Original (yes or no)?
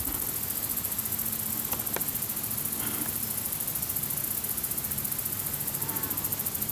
yes